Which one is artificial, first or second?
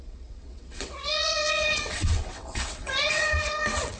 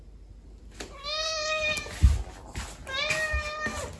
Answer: first